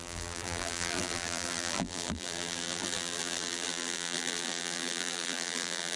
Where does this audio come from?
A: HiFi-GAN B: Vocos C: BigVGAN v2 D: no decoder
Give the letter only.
C